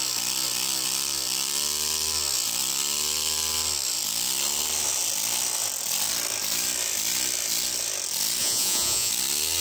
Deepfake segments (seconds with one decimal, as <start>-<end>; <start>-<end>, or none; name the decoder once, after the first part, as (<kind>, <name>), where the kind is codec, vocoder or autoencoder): 8.4-9.1 (vocoder, Vocos)